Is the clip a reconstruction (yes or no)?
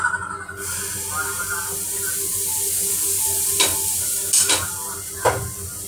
no